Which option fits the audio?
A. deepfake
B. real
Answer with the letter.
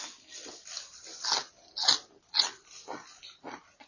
B